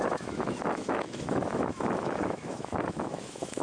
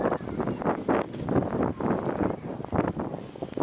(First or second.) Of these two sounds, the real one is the second